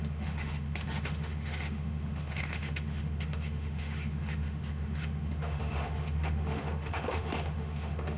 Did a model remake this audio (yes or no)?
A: yes